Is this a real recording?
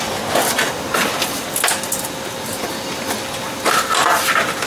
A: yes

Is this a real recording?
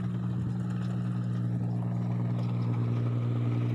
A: yes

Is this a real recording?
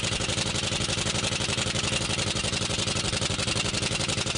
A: yes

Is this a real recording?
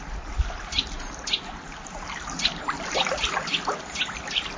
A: yes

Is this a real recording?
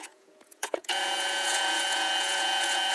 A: no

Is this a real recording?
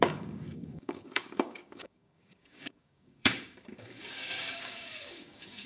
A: no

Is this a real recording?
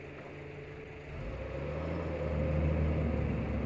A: yes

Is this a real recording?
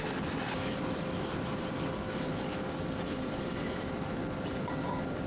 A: yes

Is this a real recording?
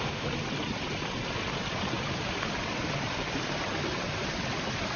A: yes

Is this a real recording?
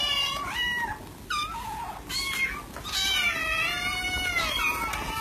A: yes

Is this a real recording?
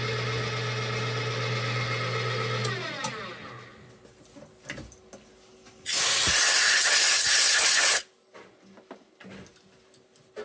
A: yes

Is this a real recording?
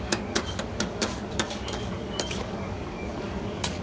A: no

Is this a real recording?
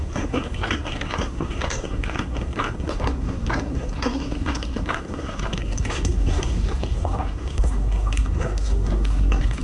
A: no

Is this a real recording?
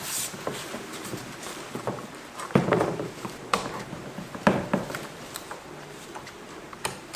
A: no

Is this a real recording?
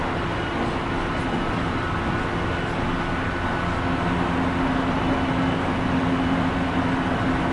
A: yes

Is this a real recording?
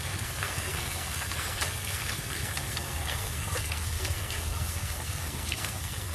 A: no